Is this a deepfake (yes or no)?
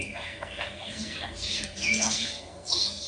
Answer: yes